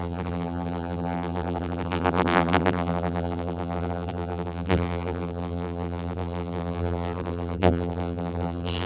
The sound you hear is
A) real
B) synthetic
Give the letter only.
B